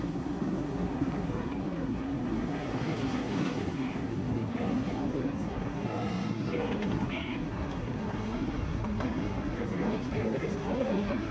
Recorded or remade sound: remade